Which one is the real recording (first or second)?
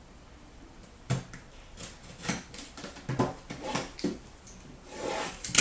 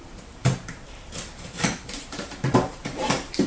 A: first